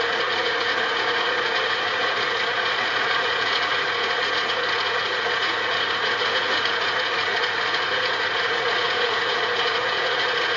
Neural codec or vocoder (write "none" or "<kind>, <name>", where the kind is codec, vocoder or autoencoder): vocoder, Vocos